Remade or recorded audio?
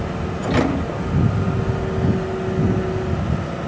recorded